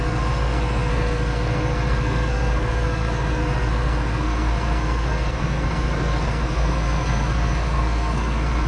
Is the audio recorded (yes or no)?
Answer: no